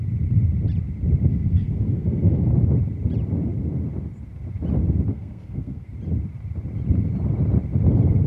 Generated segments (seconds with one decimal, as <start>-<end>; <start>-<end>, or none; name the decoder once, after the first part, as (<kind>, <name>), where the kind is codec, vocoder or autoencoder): 1.3-2.5 (codec, SNAC); 5.1-5.9